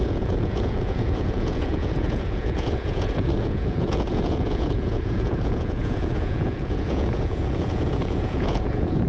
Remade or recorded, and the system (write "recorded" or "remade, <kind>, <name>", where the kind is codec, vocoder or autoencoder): remade, vocoder, Vocos